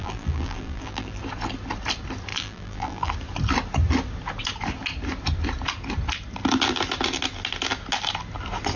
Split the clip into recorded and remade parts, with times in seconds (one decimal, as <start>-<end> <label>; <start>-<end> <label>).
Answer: 0.0-1.2 remade; 1.2-2.3 recorded; 2.3-3.1 remade; 3.1-8.8 recorded

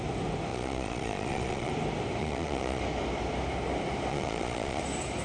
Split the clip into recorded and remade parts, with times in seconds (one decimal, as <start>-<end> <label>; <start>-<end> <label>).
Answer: 0.0-0.5 recorded; 0.5-1.7 remade; 1.7-2.2 recorded; 2.2-2.8 remade; 2.8-4.1 recorded; 4.1-4.8 remade; 4.8-5.2 recorded

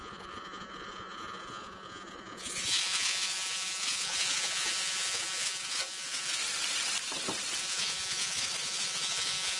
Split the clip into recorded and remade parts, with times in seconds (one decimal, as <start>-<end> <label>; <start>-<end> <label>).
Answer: 0.0-6.4 remade; 6.4-7.6 recorded; 7.6-9.6 remade

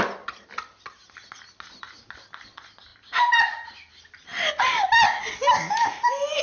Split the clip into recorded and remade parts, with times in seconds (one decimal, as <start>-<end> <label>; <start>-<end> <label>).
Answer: 0.0-6.4 recorded

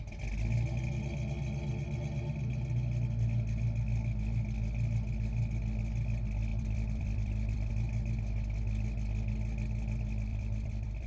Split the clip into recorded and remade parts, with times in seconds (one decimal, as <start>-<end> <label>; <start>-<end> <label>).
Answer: 0.0-6.5 recorded; 6.5-7.7 remade; 7.7-10.3 recorded; 10.3-11.1 remade

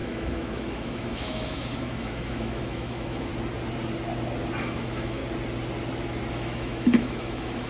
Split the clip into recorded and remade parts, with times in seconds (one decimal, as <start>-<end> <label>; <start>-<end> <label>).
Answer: 0.0-3.3 remade; 3.3-4.6 recorded; 4.6-5.2 remade; 5.2-6.3 recorded; 6.3-7.7 remade

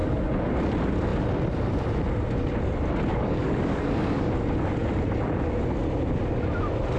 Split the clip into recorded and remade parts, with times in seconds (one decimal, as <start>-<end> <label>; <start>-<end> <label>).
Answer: 0.0-0.5 remade; 0.5-3.1 recorded; 3.1-4.3 remade; 4.3-7.0 recorded